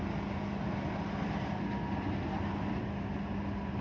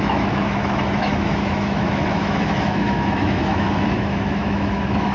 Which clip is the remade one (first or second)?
second